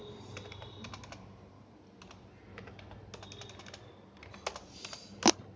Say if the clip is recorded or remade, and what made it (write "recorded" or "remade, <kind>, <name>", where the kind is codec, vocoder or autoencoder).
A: recorded